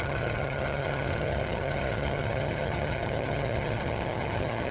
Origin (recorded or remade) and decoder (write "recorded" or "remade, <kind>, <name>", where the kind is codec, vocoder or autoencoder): remade, vocoder, HiFi-GAN